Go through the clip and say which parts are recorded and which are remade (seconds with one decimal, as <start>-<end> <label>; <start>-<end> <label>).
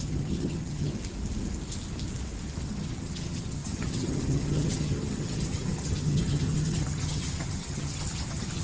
0.0-0.9 remade; 0.9-2.6 recorded; 2.6-8.6 remade